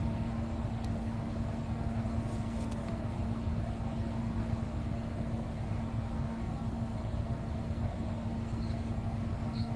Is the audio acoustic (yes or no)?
no